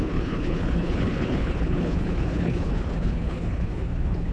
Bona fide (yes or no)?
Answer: no